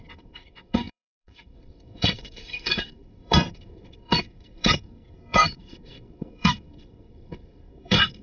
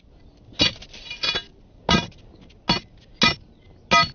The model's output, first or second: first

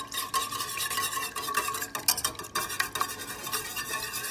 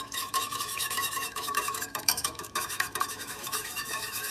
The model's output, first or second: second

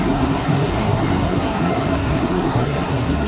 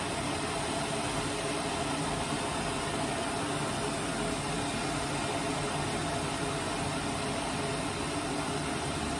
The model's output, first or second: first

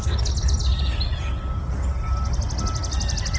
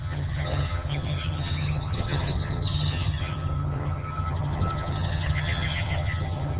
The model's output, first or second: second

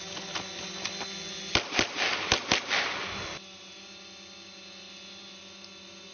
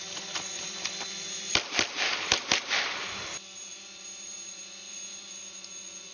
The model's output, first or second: second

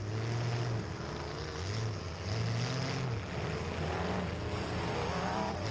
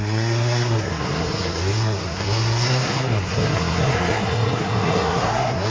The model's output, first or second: second